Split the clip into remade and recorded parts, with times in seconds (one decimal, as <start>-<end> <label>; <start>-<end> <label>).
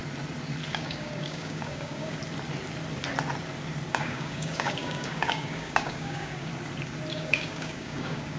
0.0-0.7 recorded; 0.7-2.2 remade; 2.2-3.9 recorded; 3.9-6.5 remade; 6.5-7.1 recorded; 7.1-8.4 remade